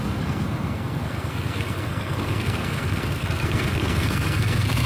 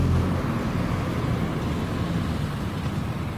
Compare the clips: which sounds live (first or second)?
second